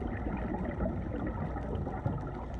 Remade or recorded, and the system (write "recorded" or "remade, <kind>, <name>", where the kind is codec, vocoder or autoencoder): recorded